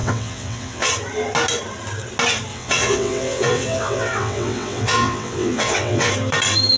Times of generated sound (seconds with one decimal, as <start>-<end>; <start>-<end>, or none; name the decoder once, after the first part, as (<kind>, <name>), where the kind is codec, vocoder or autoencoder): 0.0-0.9 (vocoder, WaveNeXt); 2.5-6.1